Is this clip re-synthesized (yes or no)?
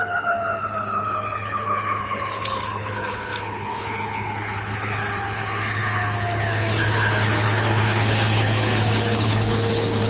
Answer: yes